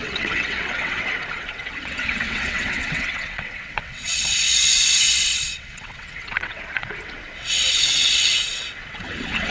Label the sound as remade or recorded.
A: remade